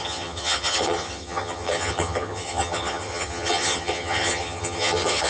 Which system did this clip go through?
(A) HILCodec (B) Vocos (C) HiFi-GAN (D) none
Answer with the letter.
C